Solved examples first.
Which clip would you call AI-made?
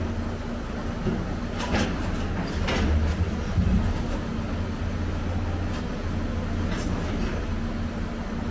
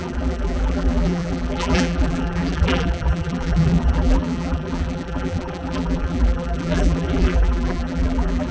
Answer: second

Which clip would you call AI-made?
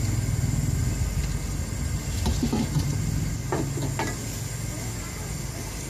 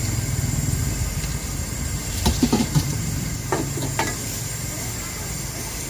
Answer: second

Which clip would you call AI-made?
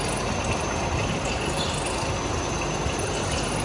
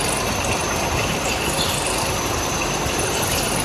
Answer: second